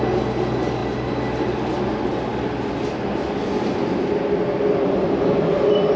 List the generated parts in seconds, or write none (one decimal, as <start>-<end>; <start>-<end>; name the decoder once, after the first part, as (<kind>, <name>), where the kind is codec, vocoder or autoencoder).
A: none